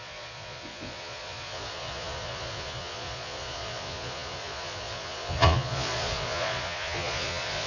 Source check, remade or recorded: remade